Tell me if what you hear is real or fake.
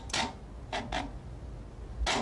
real